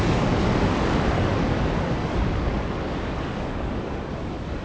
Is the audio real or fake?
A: fake